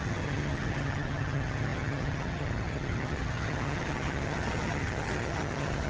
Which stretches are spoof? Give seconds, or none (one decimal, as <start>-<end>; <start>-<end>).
0.0-5.9